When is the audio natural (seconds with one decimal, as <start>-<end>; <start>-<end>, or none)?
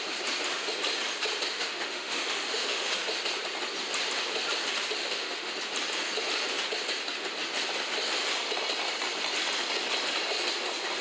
0.0-1.5; 2.9-5.0; 5.5-11.0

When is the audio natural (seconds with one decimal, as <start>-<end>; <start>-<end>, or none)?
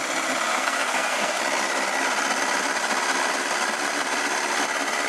0.0-0.5; 1.4-5.1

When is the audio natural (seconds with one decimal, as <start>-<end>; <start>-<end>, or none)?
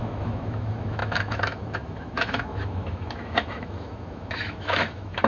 none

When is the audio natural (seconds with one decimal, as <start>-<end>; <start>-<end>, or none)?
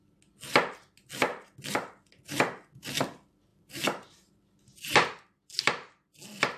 0.0-3.5; 4.6-6.6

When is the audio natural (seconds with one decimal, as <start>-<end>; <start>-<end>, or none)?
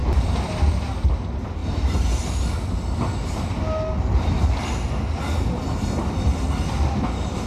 0.7-1.6; 2.2-7.5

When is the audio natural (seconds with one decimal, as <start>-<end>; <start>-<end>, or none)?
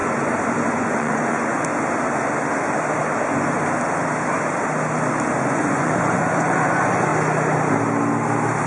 0.0-0.7; 1.7-5.4; 7.1-8.7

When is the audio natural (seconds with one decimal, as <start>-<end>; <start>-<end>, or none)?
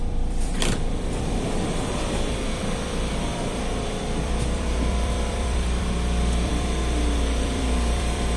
none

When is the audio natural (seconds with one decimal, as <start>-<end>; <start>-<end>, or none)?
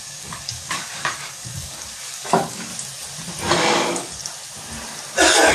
2.7-3.5; 4.2-5.5